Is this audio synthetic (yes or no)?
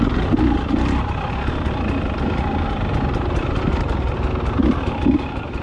no